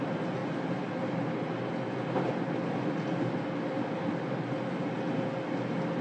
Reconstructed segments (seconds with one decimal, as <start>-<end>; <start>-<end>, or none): none